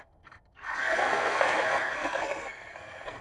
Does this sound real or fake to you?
fake